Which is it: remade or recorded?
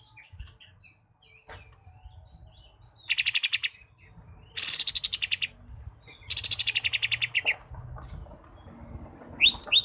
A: recorded